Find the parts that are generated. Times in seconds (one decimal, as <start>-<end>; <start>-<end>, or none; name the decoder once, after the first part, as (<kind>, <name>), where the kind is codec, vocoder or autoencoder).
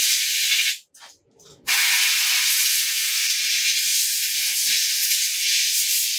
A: 2.7-3.3 (codec, SNAC)